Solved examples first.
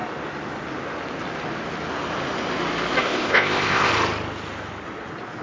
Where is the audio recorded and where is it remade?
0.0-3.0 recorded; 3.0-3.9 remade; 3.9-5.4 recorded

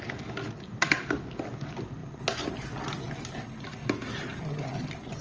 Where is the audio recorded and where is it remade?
0.0-5.2 recorded

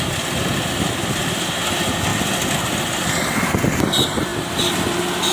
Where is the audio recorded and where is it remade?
0.0-5.3 recorded

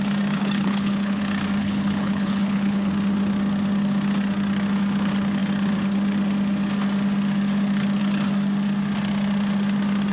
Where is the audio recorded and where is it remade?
0.0-0.4 recorded; 0.4-1.2 remade; 1.2-1.6 recorded; 1.6-2.9 remade; 2.9-10.1 recorded